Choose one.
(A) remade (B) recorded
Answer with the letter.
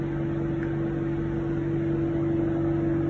B